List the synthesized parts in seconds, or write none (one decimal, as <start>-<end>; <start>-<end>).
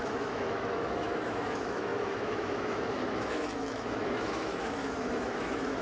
0.0-5.8